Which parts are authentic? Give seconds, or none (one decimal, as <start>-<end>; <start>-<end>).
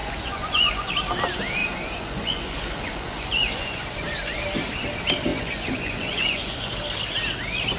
0.9-1.6; 4.4-5.3; 6.7-7.8